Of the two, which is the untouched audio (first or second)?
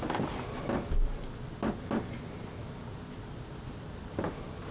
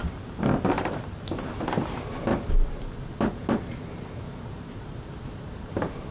first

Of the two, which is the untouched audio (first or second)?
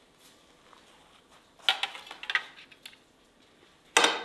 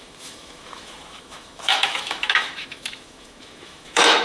first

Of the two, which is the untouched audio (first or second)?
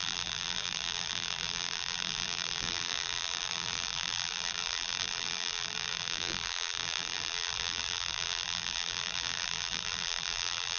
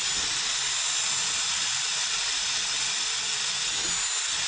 second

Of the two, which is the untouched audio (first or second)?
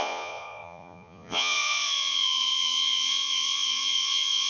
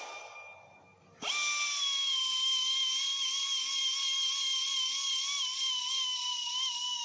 second